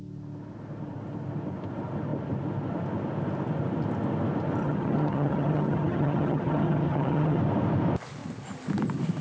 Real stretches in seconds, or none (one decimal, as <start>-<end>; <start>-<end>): 0.0-4.6; 7.4-9.2